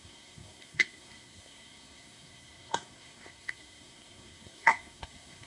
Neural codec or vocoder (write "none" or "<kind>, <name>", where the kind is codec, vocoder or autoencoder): codec, SNAC